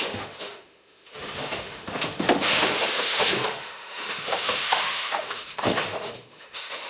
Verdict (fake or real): fake